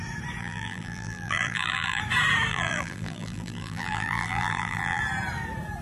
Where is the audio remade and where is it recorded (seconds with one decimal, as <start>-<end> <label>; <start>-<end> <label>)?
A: 0.0-0.4 recorded; 0.4-2.0 remade; 2.0-2.5 recorded; 2.5-5.0 remade; 5.0-5.8 recorded